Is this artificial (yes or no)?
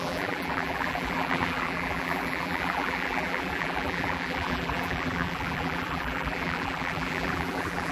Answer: yes